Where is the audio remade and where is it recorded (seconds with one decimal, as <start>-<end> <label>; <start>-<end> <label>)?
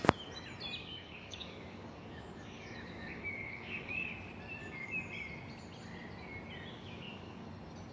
0.0-0.8 recorded; 0.8-4.1 remade; 4.1-4.6 recorded; 4.6-5.1 remade; 5.1-6.7 recorded; 6.7-7.5 remade; 7.5-7.9 recorded